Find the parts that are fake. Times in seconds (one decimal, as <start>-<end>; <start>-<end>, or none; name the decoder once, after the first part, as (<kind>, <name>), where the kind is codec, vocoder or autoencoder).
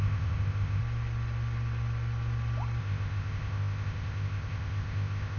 0.0-0.8 (codec, ZipCodec); 2.8-5.4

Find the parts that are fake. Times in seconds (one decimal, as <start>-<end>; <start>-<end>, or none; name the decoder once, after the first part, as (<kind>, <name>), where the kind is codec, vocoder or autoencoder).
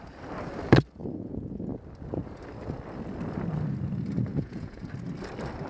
1.0-1.7 (vocoder, Vocos); 4.3-4.9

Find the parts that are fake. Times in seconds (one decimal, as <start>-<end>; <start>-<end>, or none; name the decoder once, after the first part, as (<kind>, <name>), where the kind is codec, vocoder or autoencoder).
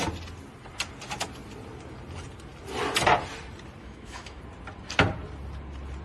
3.8-4.4 (autoencoder, DAC-VAE)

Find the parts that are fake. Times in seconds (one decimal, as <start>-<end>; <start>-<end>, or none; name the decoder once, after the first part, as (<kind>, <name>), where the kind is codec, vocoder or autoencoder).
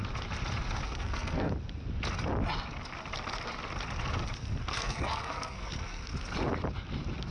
0.8-1.5 (codec, SNAC); 4.7-6.1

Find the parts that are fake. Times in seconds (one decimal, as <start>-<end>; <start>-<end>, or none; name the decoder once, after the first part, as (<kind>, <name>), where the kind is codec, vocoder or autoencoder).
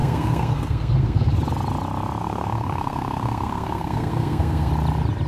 0.0-1.4 (codec, SNAC); 2.2-4.7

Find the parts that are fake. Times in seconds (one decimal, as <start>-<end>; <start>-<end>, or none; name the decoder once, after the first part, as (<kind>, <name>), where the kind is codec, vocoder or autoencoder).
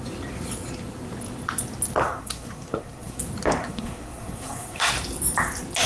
2.0-3.2 (codec, SNAC); 3.6-4.9